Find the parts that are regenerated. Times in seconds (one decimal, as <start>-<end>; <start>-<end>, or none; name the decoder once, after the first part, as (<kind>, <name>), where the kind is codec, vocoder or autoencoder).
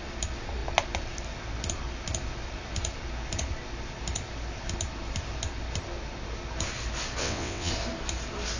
7.2-7.7 (vocoder, WaveNeXt)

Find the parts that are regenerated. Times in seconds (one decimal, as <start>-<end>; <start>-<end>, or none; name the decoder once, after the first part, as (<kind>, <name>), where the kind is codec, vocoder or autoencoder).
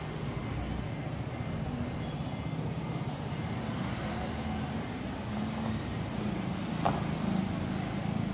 none